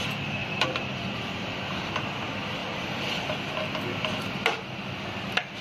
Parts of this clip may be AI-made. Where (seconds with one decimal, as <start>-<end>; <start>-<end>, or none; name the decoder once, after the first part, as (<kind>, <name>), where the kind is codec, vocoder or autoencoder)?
0.4-2.0 (vocoder, BigVGAN v2); 2.6-3.2